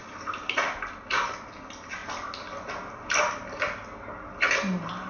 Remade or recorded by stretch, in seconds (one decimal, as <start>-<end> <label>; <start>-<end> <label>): 0.0-5.1 recorded